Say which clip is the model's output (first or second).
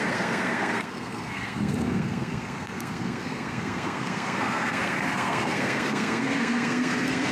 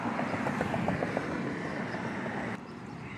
first